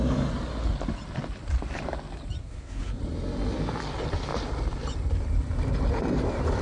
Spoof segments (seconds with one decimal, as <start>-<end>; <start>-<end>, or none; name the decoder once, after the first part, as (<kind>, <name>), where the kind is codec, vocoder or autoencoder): 2.4-3.0 (codec, SNAC)